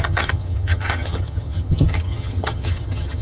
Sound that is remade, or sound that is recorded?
remade